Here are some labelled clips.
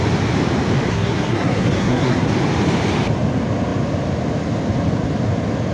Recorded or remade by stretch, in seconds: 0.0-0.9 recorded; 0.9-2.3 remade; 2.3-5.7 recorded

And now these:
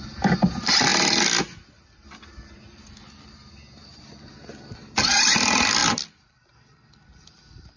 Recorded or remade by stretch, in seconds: 0.0-0.9 remade; 0.9-5.0 recorded; 5.0-7.8 remade

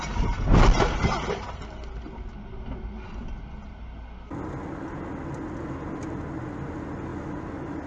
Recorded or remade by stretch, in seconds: 0.0-7.9 recorded

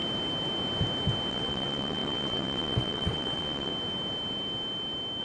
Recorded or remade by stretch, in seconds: 0.0-1.3 recorded; 1.3-3.7 remade; 3.7-5.2 recorded

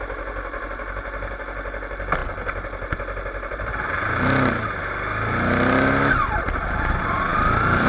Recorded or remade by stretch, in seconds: 0.0-7.9 recorded

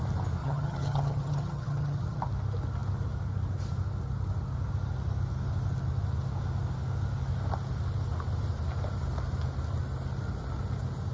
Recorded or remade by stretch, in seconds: 0.0-0.4 recorded; 0.4-2.2 remade; 2.2-11.1 recorded

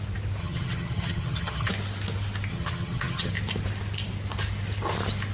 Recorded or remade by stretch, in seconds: 0.0-0.4 recorded; 0.4-1.7 remade; 1.7-2.5 recorded; 2.5-3.3 remade; 3.3-5.3 recorded

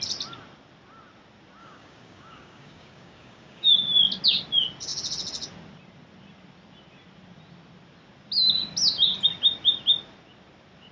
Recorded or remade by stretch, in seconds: 0.0-1.6 recorded; 1.6-3.7 remade; 3.7-10.9 recorded